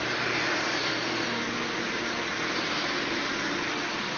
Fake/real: real